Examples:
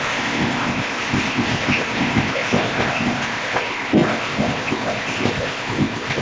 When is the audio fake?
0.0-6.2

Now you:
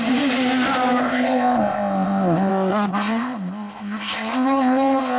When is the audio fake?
1.0-2.5; 2.9-5.2

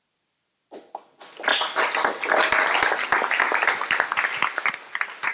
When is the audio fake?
none

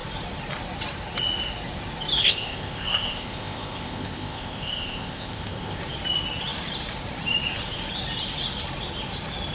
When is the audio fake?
2.2-5.8

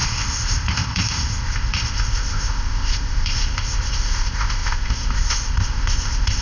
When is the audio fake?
0.0-6.4